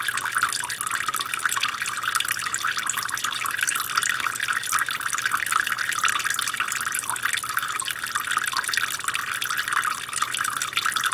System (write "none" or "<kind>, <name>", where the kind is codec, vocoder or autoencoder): none